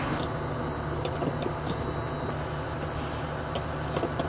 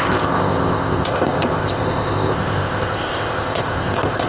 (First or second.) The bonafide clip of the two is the first